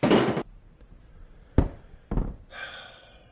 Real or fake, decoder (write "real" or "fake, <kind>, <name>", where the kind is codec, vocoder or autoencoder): fake, vocoder, BigVGAN v2